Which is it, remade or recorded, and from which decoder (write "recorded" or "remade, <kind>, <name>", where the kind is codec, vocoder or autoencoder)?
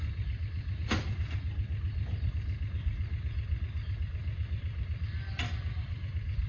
recorded